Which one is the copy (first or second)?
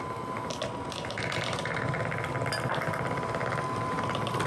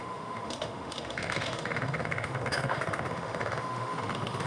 second